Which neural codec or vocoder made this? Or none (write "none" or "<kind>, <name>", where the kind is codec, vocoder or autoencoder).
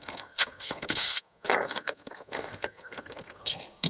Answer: codec, SNAC